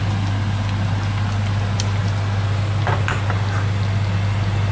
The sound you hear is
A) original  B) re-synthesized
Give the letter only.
A